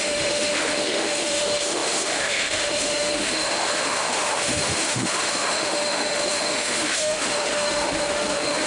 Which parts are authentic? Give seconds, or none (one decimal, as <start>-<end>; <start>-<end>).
none